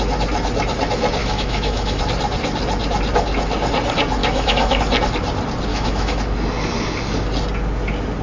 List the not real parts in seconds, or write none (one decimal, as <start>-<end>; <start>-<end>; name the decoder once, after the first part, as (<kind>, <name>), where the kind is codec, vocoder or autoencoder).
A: 1.2-2.0 (autoencoder, DAC-VAE); 4.2-4.8; 5.7-6.2

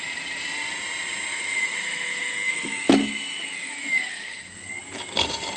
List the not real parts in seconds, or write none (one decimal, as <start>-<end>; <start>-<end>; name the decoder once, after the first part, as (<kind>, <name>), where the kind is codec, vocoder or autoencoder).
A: 1.3-4.7 (autoencoder, DAC-VAE)

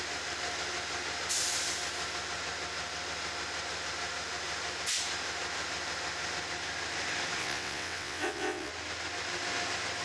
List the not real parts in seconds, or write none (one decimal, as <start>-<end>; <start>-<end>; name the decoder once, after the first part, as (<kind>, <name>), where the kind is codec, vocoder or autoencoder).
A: 7.4-8.7 (vocoder, WaveNeXt)

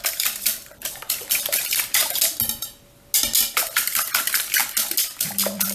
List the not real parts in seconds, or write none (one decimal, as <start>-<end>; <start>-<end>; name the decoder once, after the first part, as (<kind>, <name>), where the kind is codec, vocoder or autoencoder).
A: 0.0-2.0 (vocoder, BigVGAN v2); 3.6-4.6; 5.3-5.7